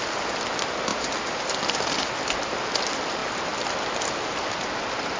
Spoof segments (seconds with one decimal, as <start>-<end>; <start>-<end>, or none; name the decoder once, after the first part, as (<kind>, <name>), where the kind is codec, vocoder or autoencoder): 3.2-3.8 (vocoder, BigVGAN v2)